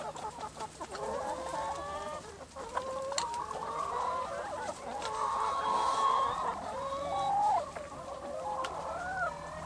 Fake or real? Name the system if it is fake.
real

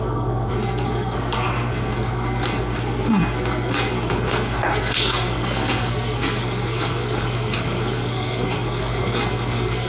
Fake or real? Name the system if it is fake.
fake, codec, SNAC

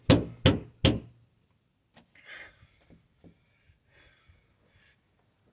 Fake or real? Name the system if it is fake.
real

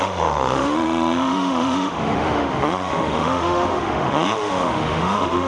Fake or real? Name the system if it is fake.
fake, autoencoder, DAC-VAE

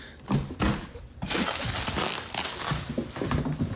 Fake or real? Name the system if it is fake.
real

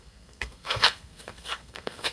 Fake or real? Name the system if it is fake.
fake, codec, SNAC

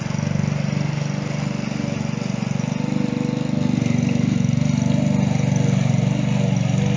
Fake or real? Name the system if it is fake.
real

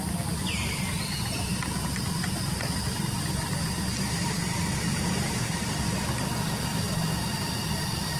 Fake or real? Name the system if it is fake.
fake, vocoder, BigVGAN v2